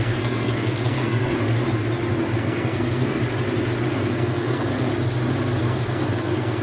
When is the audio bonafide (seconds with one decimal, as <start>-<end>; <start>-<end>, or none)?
1.4-2.2; 3.2-3.9; 4.9-5.6